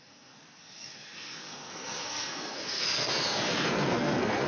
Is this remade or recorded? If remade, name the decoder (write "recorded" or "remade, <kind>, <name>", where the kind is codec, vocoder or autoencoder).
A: remade, codec, SNAC